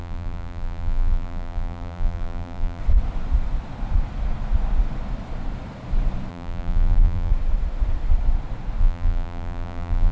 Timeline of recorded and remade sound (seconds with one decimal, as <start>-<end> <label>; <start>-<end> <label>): 0.0-2.8 remade; 2.8-6.3 recorded; 6.3-7.3 remade; 7.3-8.8 recorded; 8.8-10.1 remade